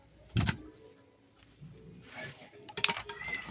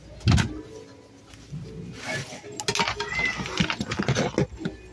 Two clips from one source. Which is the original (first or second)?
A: second